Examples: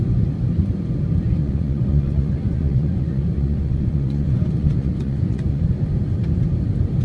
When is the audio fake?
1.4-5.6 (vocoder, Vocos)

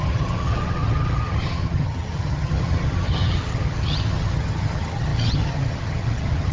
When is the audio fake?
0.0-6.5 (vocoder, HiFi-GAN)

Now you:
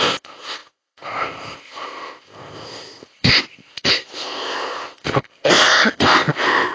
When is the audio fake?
0.0-6.7 (codec, ZipCodec)

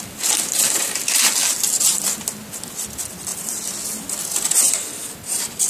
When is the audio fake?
none